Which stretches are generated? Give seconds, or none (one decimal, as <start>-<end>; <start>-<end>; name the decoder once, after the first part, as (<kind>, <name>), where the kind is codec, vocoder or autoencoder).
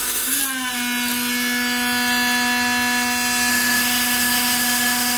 0.0-0.4 (autoencoder, DAC-VAE); 3.5-5.2